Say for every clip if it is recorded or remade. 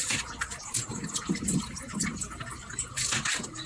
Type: recorded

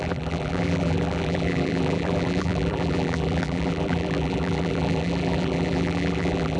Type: remade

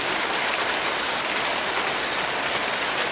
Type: recorded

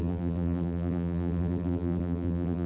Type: remade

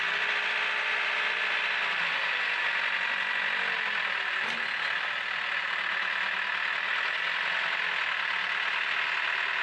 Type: recorded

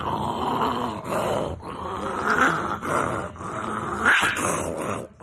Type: remade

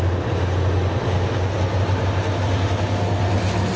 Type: recorded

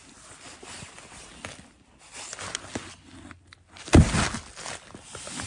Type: recorded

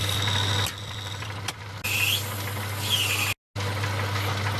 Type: recorded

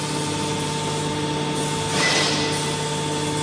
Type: recorded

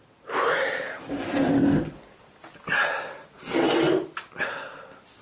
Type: recorded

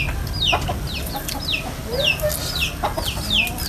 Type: recorded